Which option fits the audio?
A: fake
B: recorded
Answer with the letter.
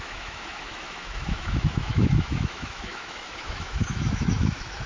A